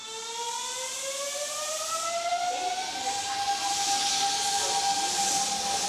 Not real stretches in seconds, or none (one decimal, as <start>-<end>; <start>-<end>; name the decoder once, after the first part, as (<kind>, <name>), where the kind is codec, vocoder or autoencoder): none